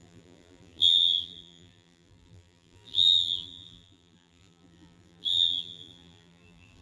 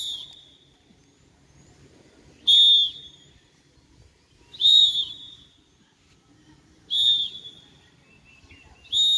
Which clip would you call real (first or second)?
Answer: second